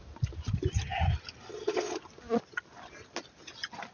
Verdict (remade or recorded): recorded